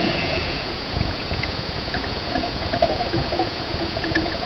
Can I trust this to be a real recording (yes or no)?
no